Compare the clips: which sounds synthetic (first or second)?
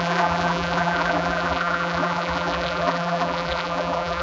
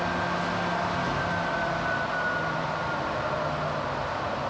first